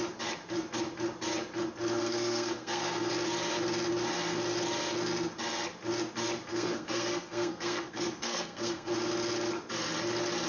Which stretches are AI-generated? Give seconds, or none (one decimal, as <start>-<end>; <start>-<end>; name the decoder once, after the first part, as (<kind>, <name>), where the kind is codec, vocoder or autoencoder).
2.0-3.1 (codec, SNAC); 6.5-8.9